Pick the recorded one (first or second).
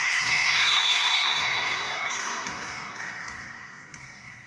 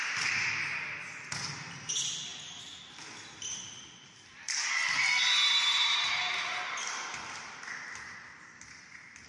second